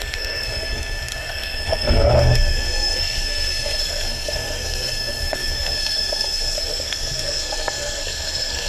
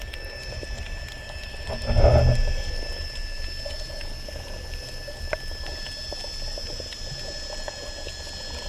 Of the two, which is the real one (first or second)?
second